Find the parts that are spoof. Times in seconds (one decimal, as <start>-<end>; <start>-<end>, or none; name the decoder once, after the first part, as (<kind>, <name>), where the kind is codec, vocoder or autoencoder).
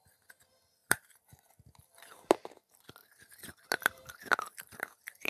0.8-1.5 (vocoder, BigVGAN v2)